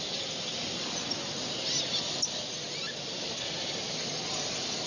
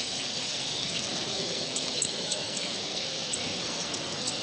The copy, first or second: second